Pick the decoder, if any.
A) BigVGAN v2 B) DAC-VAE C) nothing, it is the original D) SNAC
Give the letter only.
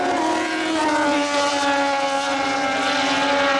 C